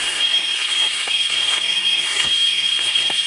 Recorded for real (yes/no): no